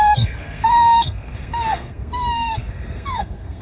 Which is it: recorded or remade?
remade